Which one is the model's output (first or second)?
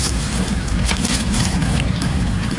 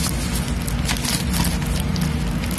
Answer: first